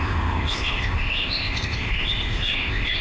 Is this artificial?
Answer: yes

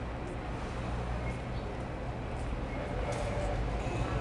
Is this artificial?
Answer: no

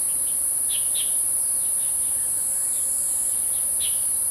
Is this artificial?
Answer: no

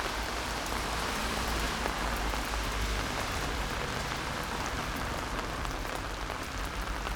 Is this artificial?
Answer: yes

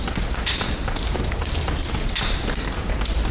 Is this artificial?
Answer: no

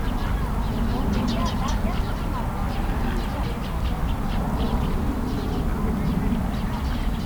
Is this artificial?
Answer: no